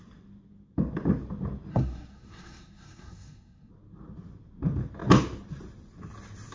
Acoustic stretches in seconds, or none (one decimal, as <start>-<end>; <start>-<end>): 0.0-1.7; 3.7-6.5